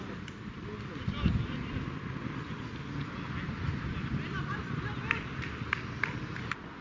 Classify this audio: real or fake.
real